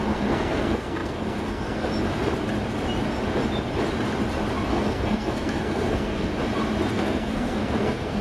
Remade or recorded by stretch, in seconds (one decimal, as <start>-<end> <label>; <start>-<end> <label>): 0.0-1.9 remade; 1.9-4.7 recorded; 4.7-6.3 remade; 6.3-6.9 recorded; 6.9-8.2 remade